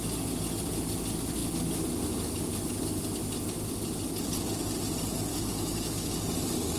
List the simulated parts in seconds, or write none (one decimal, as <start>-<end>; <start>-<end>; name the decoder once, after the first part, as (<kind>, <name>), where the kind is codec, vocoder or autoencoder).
5.3-6.1 (autoencoder, DAC-VAE)